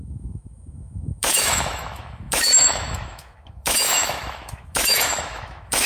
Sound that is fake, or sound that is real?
fake